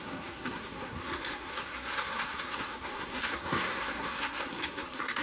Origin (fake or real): fake